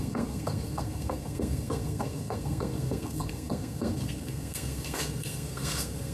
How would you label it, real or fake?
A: fake